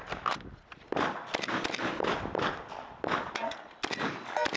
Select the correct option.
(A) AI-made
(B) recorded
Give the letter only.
B